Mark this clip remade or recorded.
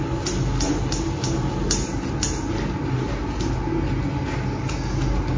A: recorded